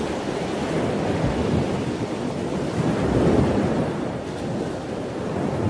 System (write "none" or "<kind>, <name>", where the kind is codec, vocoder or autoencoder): none